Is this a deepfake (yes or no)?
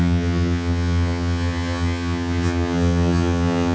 yes